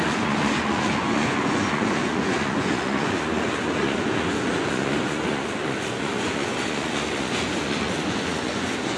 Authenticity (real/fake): fake